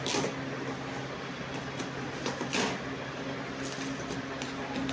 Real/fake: real